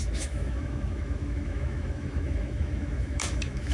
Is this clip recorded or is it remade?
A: remade